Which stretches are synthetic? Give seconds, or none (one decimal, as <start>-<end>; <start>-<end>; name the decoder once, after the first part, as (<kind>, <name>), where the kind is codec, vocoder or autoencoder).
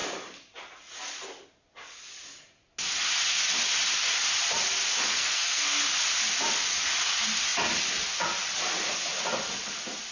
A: 5.1-5.8 (codec, SNAC)